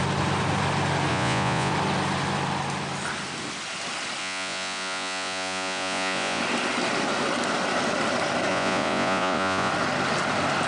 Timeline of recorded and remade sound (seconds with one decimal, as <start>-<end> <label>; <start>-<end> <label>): 0.0-1.1 recorded; 1.1-1.7 remade; 1.7-4.2 recorded; 4.2-6.4 remade; 6.4-8.5 recorded; 8.5-9.7 remade; 9.7-10.7 recorded